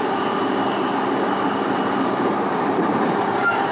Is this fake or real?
fake